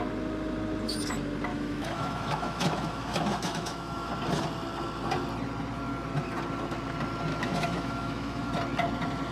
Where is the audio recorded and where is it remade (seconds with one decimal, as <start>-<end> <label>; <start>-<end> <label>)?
0.0-1.5 recorded; 1.5-4.1 remade; 4.1-7.3 recorded; 7.3-8.5 remade; 8.5-9.3 recorded